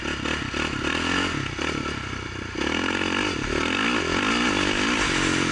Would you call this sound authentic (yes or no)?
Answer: yes